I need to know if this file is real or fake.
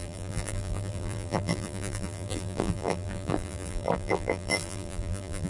fake